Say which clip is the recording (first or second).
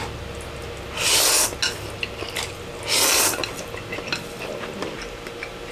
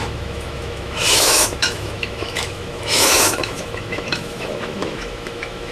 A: first